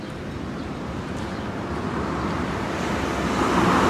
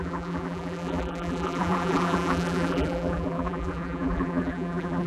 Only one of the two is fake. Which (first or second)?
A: second